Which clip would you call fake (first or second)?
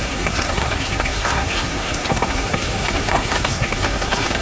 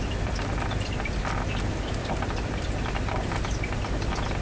first